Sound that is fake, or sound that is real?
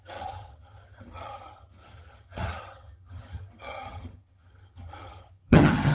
fake